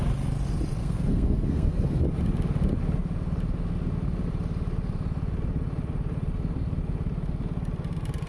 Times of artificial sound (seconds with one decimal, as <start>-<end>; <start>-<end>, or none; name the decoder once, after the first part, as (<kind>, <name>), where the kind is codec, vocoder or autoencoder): 0.8-2.0 (codec, SNAC)